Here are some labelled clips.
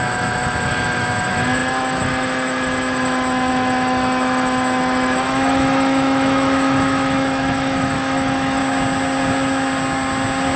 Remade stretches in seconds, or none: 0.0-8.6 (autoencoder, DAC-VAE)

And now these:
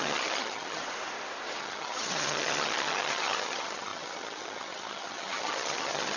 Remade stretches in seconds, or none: 0.0-0.8 (vocoder, HiFi-GAN); 1.6-6.2

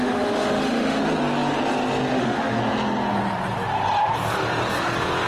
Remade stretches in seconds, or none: 0.0-1.0 (autoencoder, DAC-VAE); 2.1-2.6

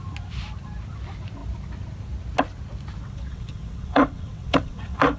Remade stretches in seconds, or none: 3.0-5.2 (vocoder, WaveNeXt)

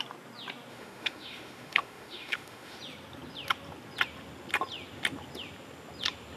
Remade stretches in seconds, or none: 0.7-2.8 (autoencoder, DAC-VAE)

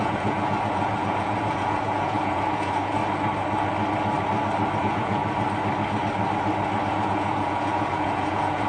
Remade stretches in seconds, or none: 0.0-3.0 (vocoder, Vocos); 4.8-5.2; 6.9-8.7